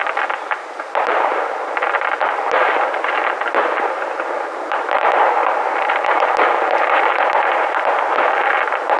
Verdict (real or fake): fake